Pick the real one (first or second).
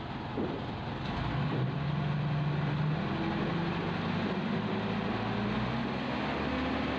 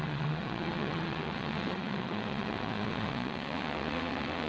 first